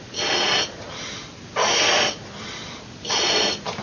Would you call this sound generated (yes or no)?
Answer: no